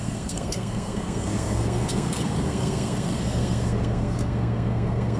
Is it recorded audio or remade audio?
remade